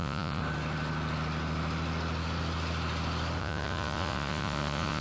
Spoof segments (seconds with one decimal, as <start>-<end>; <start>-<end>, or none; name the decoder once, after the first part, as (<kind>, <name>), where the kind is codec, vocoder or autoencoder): 0.0-0.4 (vocoder, Vocos); 3.4-5.0